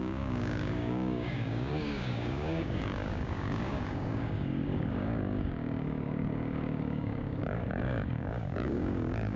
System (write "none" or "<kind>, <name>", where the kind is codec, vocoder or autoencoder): codec, DAC